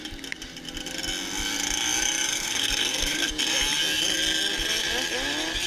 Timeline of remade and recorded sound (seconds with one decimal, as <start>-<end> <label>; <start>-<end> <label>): 0.0-2.3 recorded; 2.3-3.3 remade; 3.3-5.7 recorded